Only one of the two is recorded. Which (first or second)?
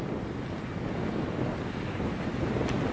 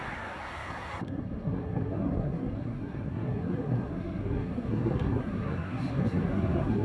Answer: first